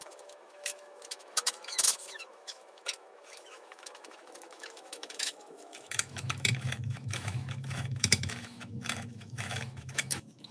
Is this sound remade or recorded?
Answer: remade